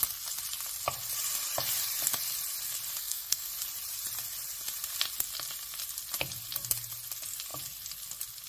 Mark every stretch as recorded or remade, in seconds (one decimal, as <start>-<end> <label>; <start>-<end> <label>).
0.0-3.0 recorded; 3.0-3.5 remade; 3.5-8.5 recorded